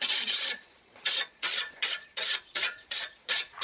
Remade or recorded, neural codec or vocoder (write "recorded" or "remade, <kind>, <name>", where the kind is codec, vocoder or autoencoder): remade, vocoder, Vocos